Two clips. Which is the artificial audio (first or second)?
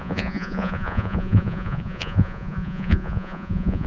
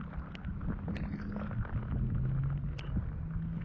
first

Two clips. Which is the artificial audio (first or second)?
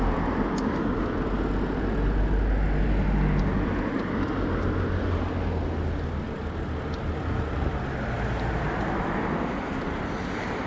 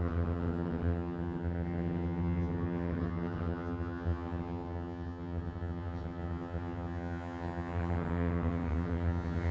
second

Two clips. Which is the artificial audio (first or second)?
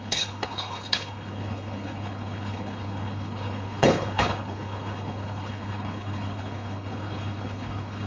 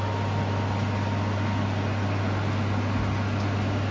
first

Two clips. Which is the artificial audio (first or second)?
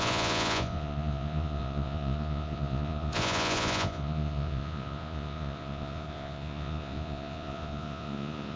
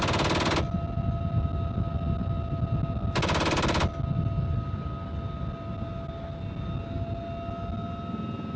first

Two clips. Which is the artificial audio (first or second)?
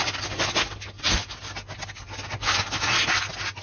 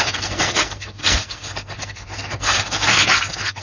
second